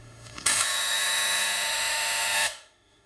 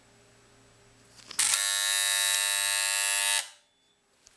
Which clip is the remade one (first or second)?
first